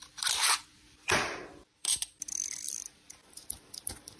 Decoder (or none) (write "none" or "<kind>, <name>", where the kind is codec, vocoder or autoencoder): vocoder, BigVGAN v2